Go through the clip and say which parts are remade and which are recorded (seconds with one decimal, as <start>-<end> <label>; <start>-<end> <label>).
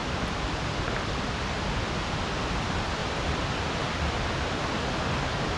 0.0-1.6 remade; 1.6-3.0 recorded; 3.0-4.6 remade; 4.6-5.6 recorded